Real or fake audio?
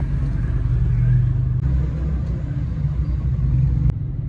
real